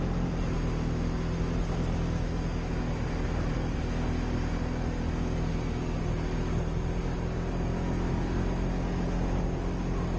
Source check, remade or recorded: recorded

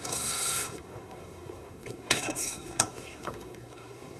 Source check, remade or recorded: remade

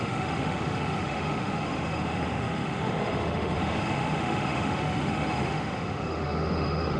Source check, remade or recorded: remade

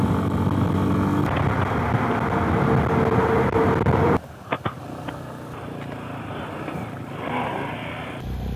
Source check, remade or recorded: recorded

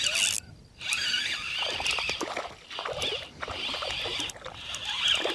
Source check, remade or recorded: recorded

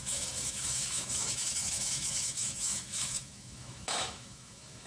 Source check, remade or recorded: remade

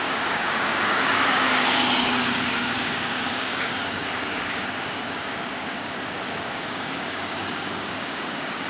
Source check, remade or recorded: remade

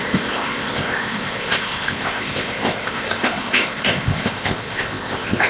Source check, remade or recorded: remade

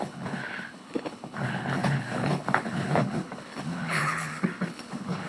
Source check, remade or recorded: remade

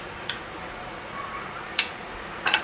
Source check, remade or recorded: remade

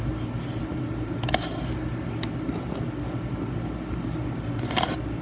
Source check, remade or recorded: recorded